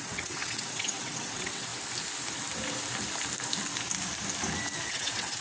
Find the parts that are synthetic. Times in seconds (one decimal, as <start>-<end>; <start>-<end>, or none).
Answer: 0.0-1.7; 4.9-5.4